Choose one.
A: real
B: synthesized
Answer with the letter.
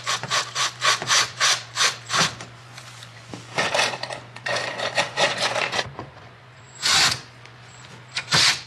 B